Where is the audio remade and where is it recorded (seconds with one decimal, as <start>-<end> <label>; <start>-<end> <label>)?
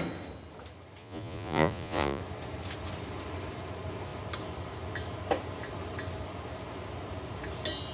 0.0-1.0 recorded; 1.0-2.2 remade; 2.2-7.9 recorded